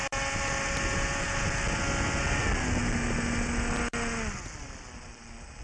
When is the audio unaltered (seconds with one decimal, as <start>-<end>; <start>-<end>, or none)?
0.0-5.6